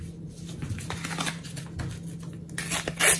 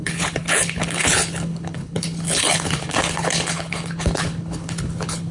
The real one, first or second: first